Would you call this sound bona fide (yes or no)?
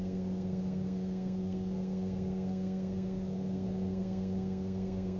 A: no